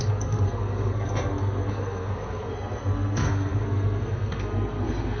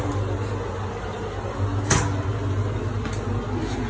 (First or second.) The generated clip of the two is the first